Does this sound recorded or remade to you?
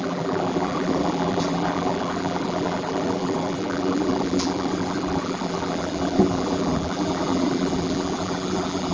remade